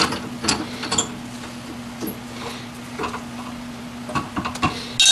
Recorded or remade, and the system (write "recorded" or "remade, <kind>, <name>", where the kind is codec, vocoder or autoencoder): recorded